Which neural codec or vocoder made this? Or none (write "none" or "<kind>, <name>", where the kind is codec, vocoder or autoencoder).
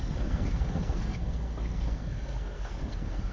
codec, SNAC